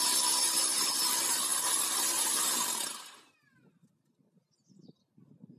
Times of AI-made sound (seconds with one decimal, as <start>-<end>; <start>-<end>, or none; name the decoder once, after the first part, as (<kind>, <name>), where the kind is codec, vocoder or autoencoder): none